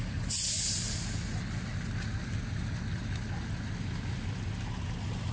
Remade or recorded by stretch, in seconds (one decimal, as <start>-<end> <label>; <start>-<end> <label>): 0.0-5.3 recorded